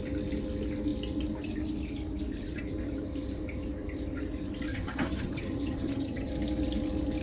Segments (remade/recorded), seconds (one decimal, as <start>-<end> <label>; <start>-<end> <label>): 0.0-4.7 recorded; 4.7-6.3 remade; 6.3-7.2 recorded